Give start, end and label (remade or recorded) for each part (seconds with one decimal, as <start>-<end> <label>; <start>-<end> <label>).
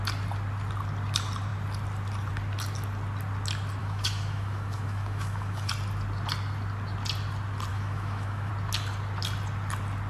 0.0-3.8 recorded; 3.8-5.7 remade; 5.7-7.7 recorded; 7.7-8.5 remade; 8.5-10.1 recorded